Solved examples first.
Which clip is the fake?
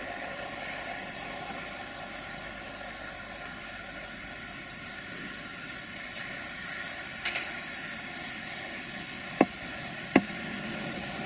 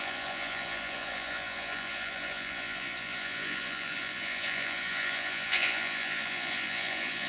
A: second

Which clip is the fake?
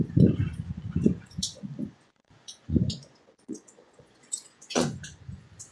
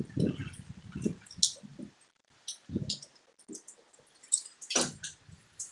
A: first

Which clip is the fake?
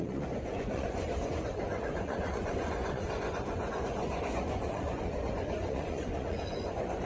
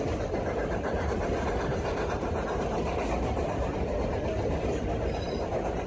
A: first